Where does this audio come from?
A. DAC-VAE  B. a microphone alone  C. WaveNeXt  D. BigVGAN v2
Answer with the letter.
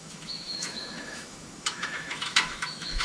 A